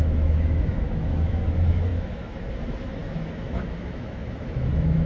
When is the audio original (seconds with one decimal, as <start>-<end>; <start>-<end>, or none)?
none